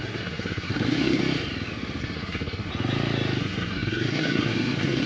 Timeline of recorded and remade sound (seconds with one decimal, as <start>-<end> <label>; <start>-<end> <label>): 0.0-1.2 remade; 1.2-2.0 recorded; 2.0-2.7 remade; 2.7-3.4 recorded; 3.4-5.1 remade

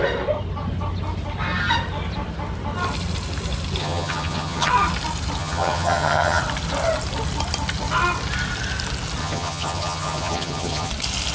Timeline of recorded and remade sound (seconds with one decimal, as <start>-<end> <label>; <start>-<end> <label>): 0.0-3.8 recorded; 3.8-4.7 remade; 4.7-5.4 recorded; 5.4-6.4 remade; 6.4-9.2 recorded; 9.2-10.9 remade; 10.9-11.3 recorded

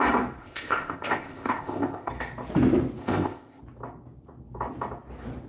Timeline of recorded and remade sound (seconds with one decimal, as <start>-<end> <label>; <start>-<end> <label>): 0.0-0.4 recorded; 0.4-2.1 remade; 2.1-3.0 recorded; 3.0-3.6 remade; 3.6-5.5 recorded

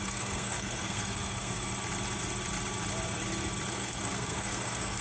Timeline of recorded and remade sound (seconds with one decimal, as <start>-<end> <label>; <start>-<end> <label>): 0.0-1.7 remade; 1.7-3.7 recorded; 3.7-5.0 remade

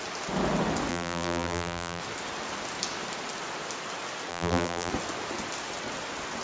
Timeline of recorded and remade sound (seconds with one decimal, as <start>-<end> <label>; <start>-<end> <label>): 0.0-0.9 recorded; 0.9-2.0 remade; 2.0-4.3 recorded; 4.3-4.9 remade; 4.9-6.4 recorded

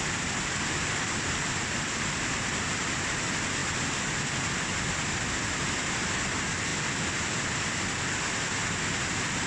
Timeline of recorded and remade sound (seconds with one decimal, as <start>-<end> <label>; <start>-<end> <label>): 0.0-9.5 recorded

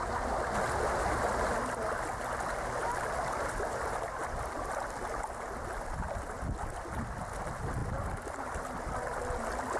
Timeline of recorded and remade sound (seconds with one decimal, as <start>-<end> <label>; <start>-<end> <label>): 0.0-9.8 recorded